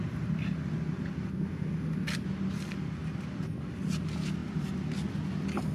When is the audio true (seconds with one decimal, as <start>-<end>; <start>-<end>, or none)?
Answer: 0.0-5.7

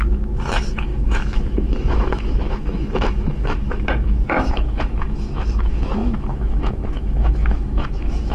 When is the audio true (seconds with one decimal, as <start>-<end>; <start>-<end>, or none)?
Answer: none

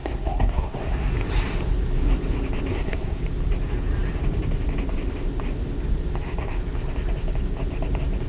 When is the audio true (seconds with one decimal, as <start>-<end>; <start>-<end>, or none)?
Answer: 1.1-2.7; 3.2-8.3